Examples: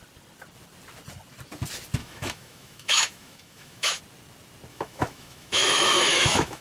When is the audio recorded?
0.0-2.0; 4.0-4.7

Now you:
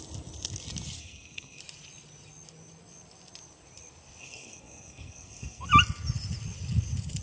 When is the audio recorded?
0.0-1.0; 1.6-4.2; 5.7-7.2

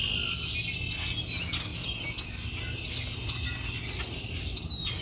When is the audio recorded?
0.0-5.0